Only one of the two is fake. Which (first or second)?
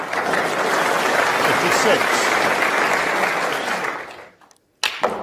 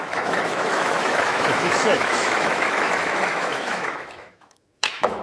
second